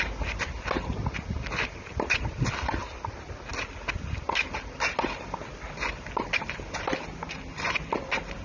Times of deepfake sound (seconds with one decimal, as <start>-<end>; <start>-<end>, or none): none